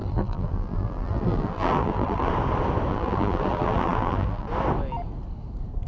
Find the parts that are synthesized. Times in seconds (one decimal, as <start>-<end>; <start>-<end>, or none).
0.0-2.3; 2.9-4.5